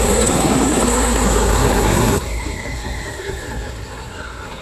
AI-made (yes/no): yes